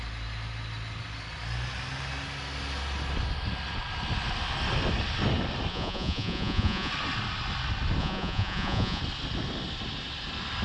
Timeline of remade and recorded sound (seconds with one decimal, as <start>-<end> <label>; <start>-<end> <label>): 0.0-5.7 recorded; 5.7-6.9 remade; 6.9-8.0 recorded; 8.0-9.0 remade; 9.0-10.6 recorded